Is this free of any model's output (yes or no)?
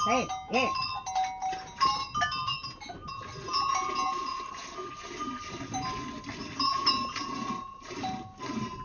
yes